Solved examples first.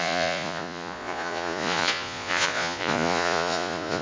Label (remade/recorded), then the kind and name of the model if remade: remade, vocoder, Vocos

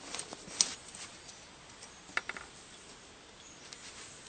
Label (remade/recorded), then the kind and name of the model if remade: recorded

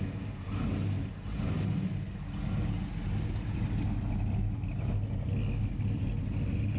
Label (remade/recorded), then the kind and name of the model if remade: recorded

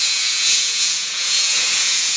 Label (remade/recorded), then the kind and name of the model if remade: remade, vocoder, Vocos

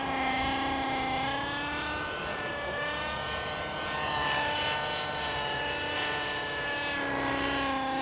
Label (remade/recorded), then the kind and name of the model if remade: recorded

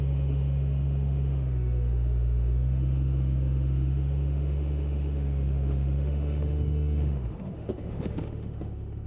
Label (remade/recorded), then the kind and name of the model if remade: remade, autoencoder, DAC-VAE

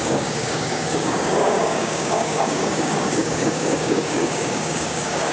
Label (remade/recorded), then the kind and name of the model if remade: remade, codec, DAC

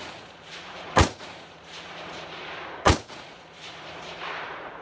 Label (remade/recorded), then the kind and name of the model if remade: remade, vocoder, Vocos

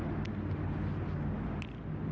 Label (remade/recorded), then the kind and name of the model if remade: recorded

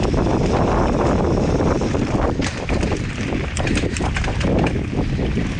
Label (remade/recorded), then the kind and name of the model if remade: remade, vocoder, BigVGAN v2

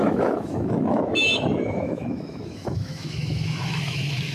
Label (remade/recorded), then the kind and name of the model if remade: remade, autoencoder, DAC-VAE